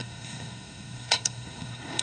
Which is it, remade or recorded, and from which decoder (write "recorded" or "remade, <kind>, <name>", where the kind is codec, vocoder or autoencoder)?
remade, codec, SNAC